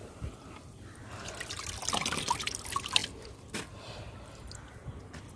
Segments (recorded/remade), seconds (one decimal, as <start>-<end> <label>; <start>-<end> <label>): 0.0-5.4 recorded

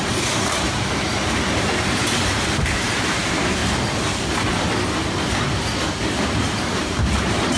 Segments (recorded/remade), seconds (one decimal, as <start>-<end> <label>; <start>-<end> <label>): 0.0-3.6 remade; 3.6-6.0 recorded; 6.0-7.6 remade